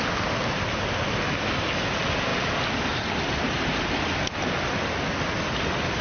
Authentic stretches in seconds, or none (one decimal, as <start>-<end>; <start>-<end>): 0.0-6.0